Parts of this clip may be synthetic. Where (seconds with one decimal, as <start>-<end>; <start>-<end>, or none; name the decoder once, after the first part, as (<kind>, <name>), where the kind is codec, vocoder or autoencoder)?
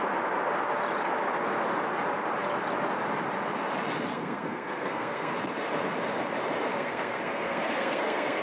4.1-5.3 (codec, SNAC); 6.7-8.4